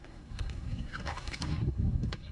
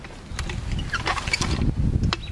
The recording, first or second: second